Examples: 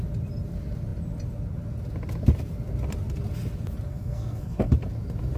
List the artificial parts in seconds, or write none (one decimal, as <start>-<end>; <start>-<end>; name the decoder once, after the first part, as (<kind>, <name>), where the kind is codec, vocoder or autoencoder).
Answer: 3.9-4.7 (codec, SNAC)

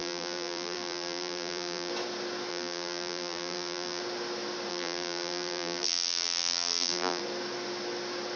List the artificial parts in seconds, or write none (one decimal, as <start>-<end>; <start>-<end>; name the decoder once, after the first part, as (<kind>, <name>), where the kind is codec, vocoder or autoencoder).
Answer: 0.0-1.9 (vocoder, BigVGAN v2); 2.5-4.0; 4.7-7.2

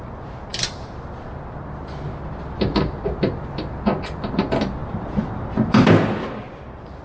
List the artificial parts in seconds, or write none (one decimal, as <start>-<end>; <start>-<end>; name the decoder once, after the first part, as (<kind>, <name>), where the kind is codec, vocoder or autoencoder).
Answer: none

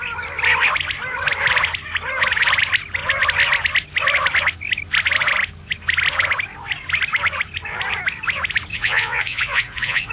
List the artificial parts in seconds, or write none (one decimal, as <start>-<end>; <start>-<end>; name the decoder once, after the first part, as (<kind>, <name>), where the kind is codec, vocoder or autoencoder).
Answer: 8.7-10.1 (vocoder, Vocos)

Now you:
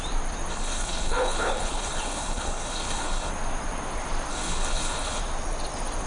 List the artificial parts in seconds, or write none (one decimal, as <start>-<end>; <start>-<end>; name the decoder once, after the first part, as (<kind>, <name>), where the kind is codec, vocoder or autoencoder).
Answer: 0.5-3.3 (codec, HILCodec); 4.3-5.2

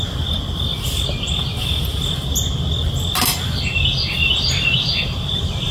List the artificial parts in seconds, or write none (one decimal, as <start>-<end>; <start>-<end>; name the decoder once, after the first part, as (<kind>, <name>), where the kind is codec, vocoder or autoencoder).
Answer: 4.2-5.7 (vocoder, BigVGAN v2)